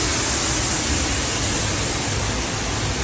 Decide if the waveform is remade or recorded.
recorded